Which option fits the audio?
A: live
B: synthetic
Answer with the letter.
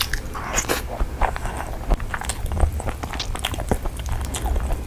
A